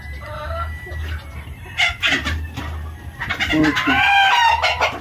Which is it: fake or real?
real